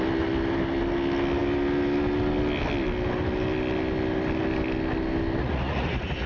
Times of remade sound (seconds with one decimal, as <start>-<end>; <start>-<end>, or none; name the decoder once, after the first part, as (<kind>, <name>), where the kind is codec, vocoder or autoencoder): 5.4-6.3 (vocoder, Vocos)